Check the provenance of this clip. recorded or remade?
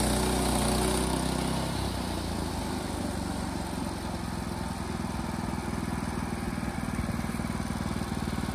recorded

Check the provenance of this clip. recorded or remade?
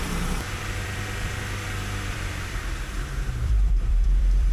remade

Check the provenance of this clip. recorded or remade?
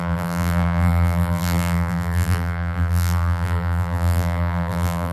remade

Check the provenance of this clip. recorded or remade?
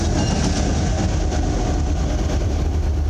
recorded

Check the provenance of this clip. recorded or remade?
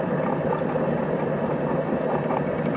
remade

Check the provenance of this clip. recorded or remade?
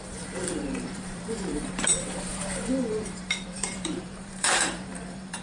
remade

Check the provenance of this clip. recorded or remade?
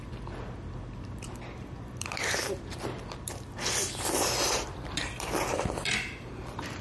remade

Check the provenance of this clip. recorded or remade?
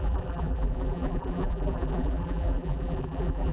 remade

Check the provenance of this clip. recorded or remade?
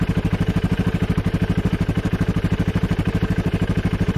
remade